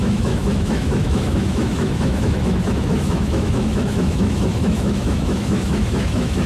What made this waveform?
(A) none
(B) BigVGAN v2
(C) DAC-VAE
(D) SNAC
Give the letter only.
C